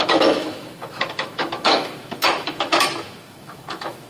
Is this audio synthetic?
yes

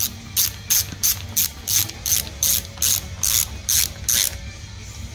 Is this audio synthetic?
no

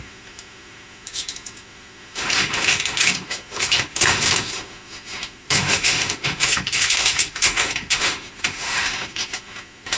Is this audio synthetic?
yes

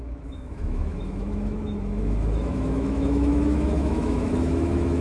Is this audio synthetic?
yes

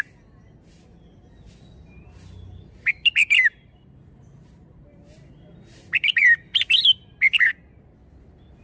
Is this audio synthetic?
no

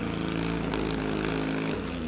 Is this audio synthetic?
no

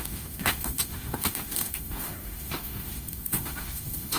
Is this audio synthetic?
yes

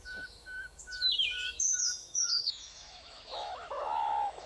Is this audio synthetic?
yes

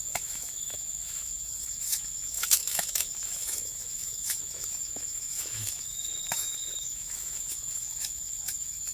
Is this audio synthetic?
yes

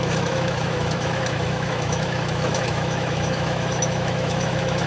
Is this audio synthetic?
yes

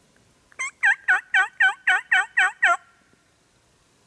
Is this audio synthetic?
no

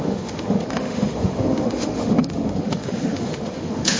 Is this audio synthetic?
yes